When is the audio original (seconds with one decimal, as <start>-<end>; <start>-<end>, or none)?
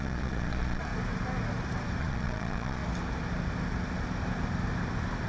0.9-2.0; 2.8-5.3